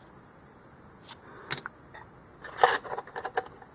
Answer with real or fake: real